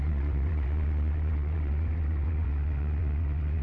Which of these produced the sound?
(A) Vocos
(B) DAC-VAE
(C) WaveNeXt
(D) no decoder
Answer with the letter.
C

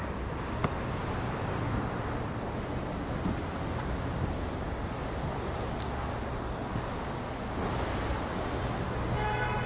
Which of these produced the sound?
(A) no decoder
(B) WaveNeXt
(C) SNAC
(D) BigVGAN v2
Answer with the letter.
A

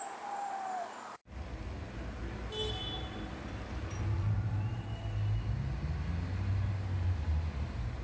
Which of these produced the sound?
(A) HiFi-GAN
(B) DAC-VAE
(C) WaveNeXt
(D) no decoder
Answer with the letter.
D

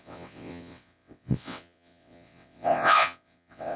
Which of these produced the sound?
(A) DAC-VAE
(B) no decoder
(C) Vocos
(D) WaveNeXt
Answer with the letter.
D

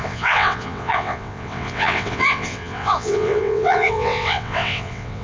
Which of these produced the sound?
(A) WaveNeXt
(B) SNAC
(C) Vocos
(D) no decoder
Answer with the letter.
A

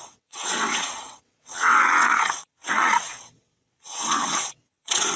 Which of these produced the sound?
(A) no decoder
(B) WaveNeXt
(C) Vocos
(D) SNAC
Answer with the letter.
B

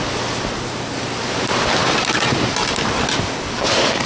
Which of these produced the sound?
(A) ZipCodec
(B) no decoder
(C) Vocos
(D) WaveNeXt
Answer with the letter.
B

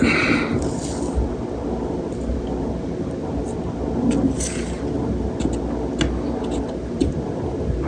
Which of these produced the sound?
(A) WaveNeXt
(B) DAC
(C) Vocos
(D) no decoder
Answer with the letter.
D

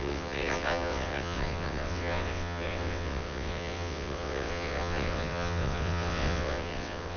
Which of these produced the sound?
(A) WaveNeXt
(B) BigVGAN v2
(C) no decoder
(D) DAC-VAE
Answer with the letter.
A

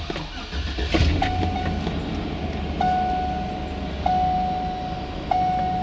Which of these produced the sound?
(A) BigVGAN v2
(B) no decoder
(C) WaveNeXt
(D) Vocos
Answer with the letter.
B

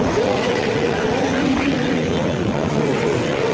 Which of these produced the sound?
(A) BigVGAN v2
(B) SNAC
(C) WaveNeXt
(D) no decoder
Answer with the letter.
C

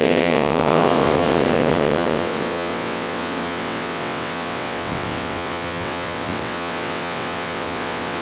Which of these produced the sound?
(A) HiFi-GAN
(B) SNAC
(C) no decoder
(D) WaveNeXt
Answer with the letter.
D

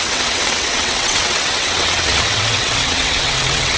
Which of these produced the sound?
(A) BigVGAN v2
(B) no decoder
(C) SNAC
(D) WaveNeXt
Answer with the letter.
D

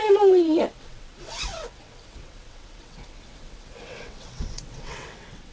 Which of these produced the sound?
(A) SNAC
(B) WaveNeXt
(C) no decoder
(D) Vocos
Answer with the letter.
B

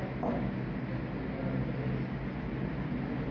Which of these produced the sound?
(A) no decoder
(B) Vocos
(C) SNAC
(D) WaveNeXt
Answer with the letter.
A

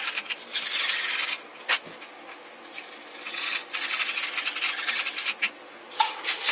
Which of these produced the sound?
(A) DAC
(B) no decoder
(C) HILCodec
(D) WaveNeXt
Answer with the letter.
B